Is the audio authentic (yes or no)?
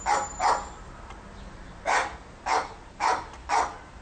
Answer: yes